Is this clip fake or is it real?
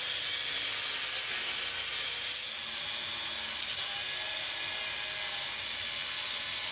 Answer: real